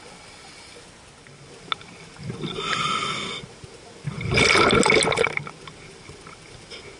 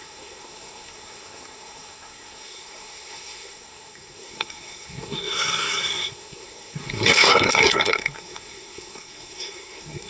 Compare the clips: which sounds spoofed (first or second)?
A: second